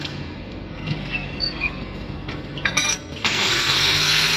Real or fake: fake